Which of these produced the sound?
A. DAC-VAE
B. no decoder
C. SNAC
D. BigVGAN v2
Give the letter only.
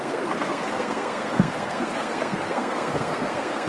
C